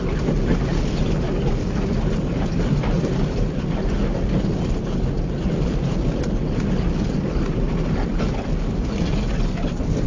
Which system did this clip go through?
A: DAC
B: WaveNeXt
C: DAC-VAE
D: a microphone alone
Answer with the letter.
D